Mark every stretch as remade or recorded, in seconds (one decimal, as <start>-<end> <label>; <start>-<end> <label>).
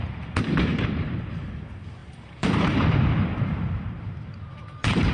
0.0-0.7 recorded; 0.7-1.5 remade; 1.5-2.0 recorded; 2.0-5.1 remade